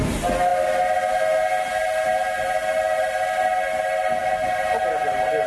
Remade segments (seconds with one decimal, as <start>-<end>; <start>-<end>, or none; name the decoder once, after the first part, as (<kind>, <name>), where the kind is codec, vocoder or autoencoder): none